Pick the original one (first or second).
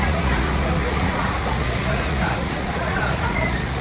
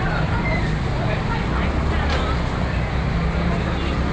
second